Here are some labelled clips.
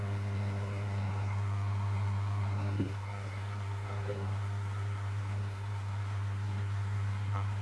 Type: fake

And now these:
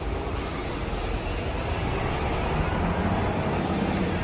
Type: real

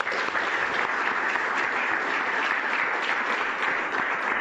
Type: real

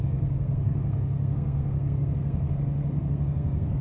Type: fake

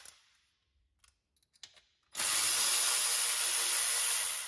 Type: real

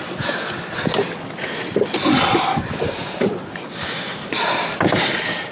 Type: real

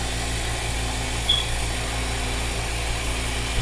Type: real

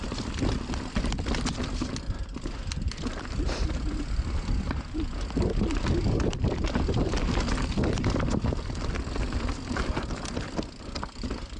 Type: real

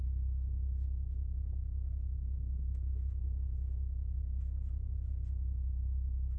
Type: real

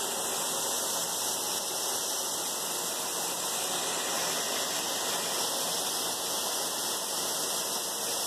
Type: real